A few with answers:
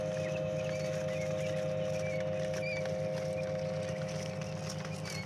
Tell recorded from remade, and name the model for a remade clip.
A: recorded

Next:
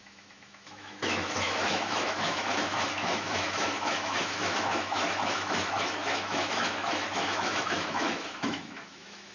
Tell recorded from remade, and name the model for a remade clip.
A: remade, autoencoder, DAC-VAE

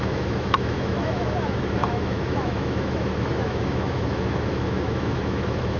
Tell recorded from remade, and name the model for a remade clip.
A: remade, autoencoder, DAC-VAE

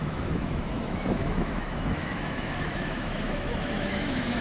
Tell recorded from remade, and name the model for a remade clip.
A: remade, autoencoder, DAC-VAE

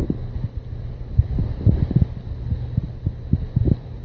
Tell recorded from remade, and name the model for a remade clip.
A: recorded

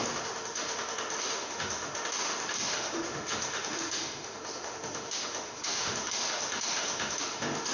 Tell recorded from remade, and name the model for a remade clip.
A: remade, autoencoder, DAC-VAE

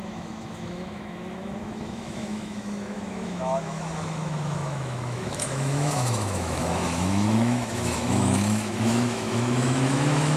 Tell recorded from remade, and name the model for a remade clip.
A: remade, autoencoder, DAC-VAE